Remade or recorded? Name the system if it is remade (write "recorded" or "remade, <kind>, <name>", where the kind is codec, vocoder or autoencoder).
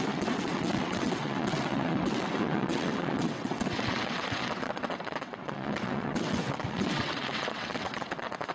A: remade, vocoder, WaveNeXt